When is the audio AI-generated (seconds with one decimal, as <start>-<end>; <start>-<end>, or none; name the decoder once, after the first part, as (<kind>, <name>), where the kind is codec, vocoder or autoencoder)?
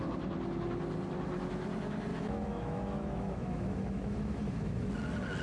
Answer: 2.1-4.9 (autoencoder, DAC-VAE)